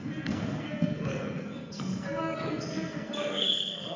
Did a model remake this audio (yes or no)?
yes